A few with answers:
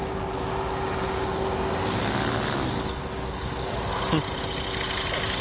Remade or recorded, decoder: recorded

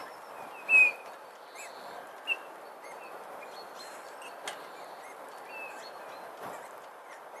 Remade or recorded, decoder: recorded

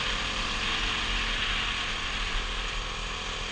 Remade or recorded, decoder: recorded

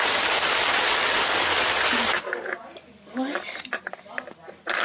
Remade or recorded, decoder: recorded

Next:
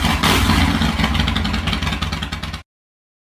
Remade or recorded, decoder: recorded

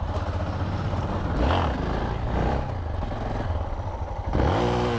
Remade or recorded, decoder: recorded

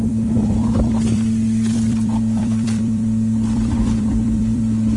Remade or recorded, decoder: remade, vocoder, BigVGAN v2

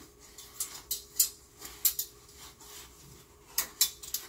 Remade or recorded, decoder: recorded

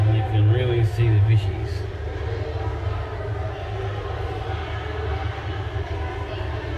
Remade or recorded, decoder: recorded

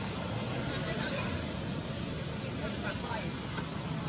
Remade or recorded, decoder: recorded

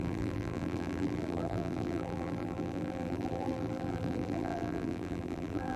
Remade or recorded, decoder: remade, vocoder, BigVGAN v2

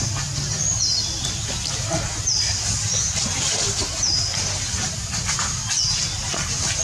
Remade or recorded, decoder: recorded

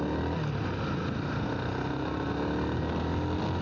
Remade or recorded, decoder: recorded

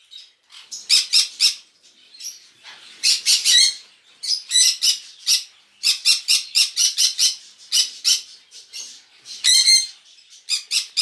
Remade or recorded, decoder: remade, vocoder, BigVGAN v2